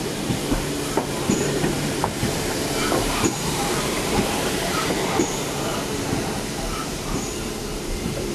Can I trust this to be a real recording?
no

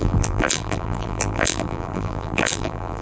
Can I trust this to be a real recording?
no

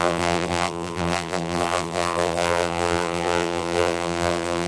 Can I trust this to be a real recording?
no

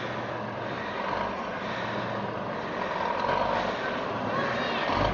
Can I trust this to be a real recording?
yes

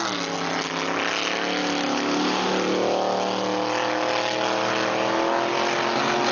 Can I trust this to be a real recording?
yes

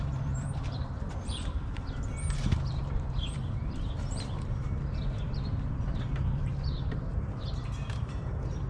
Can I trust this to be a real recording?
no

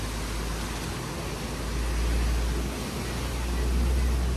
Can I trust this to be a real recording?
yes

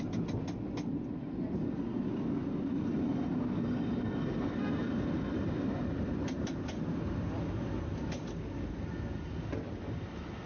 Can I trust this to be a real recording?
yes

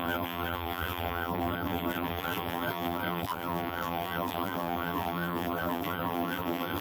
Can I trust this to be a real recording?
no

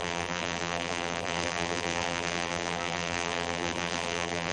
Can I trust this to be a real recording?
no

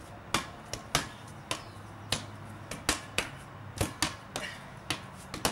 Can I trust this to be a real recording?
yes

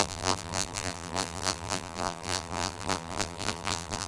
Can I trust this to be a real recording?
no